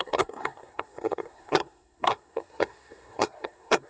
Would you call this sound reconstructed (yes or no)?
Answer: yes